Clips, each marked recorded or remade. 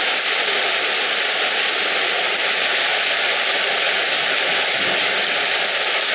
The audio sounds recorded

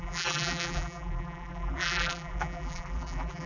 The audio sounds remade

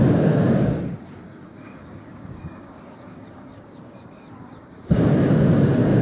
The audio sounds remade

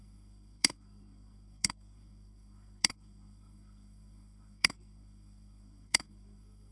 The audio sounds remade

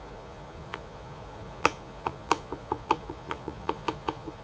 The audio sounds remade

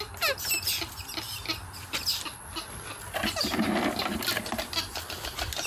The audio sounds recorded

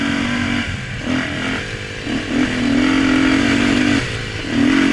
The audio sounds recorded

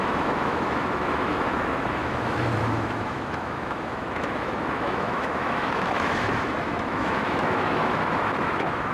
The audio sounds remade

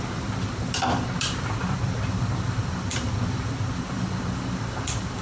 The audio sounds remade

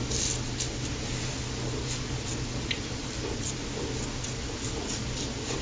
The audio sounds recorded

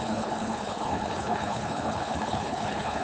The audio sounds remade